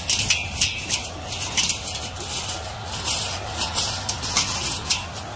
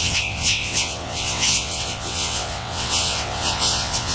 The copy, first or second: second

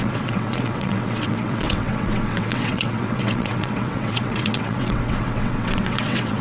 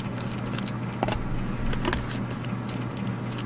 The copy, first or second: first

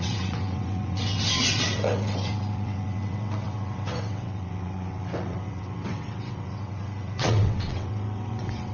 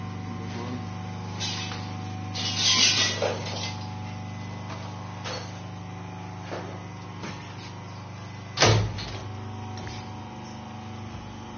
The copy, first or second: first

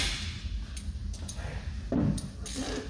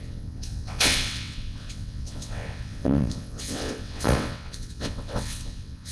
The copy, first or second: second